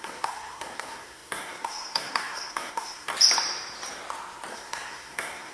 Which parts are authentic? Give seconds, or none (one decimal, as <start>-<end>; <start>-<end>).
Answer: 3.1-4.5